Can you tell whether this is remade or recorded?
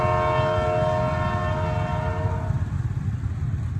recorded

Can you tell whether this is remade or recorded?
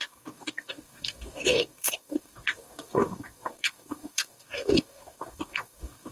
remade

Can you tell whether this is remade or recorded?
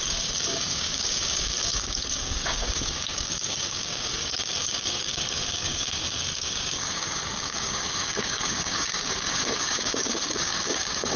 remade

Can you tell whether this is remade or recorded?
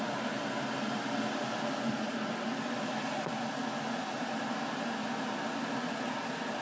recorded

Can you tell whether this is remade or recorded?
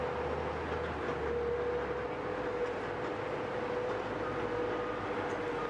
recorded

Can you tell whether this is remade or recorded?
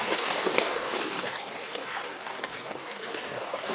remade